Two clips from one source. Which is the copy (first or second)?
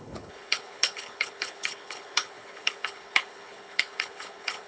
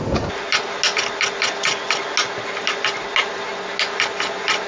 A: first